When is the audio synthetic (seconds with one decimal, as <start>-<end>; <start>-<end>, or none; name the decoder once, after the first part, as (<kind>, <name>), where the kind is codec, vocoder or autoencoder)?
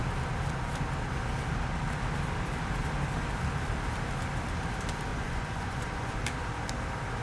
5.1-6.2 (vocoder, Vocos)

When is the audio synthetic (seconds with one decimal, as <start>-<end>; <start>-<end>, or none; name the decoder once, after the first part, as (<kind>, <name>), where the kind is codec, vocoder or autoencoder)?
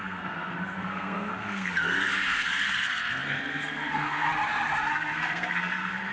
0.0-4.3 (codec, SNAC); 4.9-6.1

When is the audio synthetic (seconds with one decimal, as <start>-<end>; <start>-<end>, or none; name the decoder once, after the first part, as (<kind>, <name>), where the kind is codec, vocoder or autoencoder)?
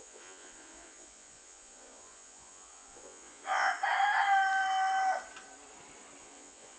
0.0-3.7 (vocoder, Vocos); 6.2-6.8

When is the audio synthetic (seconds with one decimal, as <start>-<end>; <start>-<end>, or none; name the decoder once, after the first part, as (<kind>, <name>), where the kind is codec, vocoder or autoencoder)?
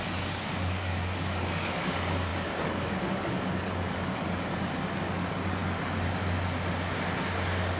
0.0-5.6 (codec, DAC)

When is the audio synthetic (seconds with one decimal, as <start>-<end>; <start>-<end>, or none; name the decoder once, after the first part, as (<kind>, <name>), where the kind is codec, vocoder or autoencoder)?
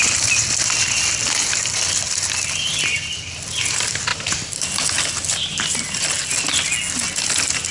none